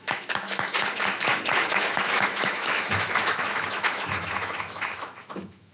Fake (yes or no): yes